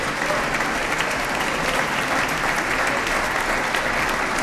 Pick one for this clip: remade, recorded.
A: recorded